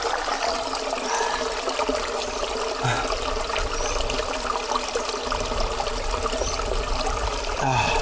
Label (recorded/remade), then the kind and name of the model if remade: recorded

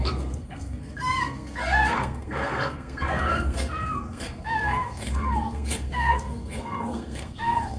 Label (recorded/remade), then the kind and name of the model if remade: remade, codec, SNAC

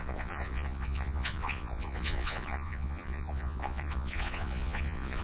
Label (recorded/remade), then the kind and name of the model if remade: remade, vocoder, Vocos